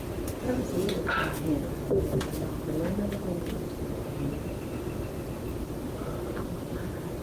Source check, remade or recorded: recorded